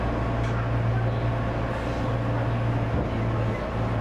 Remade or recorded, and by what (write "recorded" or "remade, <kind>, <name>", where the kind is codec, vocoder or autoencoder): recorded